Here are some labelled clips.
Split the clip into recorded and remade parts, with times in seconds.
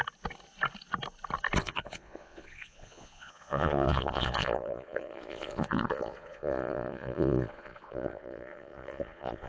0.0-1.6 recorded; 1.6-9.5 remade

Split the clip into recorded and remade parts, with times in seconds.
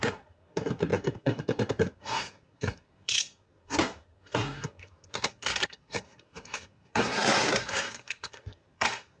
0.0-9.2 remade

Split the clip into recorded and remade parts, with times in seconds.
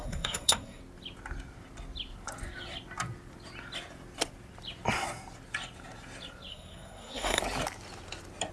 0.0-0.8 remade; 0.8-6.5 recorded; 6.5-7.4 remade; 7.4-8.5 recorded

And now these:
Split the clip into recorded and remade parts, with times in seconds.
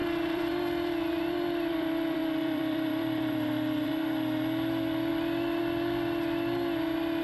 0.0-3.9 remade; 3.9-7.2 recorded